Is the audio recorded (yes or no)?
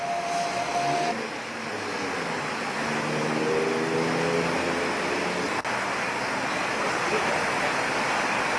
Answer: yes